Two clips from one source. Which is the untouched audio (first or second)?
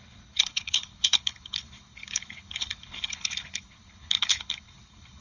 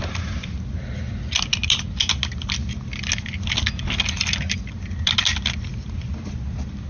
second